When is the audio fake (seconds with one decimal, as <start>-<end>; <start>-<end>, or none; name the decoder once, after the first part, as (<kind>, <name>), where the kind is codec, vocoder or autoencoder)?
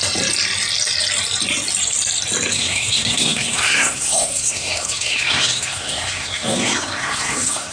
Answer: 2.5-7.7 (codec, SNAC)